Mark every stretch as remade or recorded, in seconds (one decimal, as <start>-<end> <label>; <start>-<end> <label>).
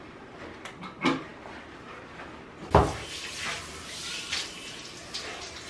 0.0-5.7 recorded